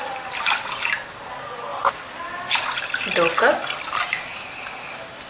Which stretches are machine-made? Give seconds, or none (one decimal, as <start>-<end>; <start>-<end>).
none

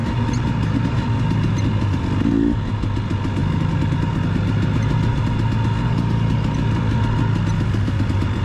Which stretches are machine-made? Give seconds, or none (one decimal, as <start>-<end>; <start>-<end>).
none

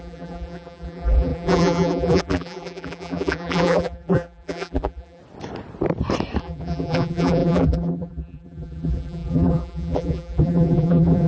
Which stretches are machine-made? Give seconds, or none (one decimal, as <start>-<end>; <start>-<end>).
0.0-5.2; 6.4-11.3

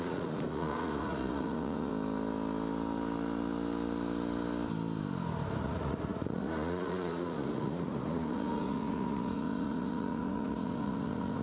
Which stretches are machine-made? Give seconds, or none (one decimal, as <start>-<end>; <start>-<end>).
0.0-1.9; 5.6-11.4

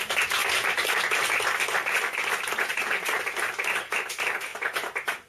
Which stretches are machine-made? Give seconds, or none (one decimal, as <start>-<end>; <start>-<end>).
0.4-1.0; 2.7-3.5

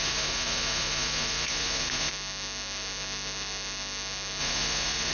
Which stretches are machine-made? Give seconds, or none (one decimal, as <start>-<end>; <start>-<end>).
0.0-2.1; 4.4-5.1

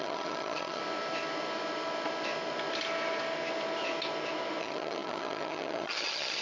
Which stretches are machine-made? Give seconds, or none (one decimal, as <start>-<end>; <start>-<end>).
0.0-0.8; 4.6-6.4

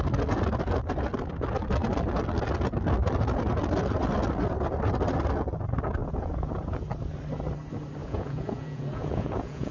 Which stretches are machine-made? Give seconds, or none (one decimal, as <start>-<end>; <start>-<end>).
6.0-6.9; 8.0-9.7